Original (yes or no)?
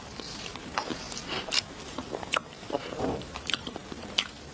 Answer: no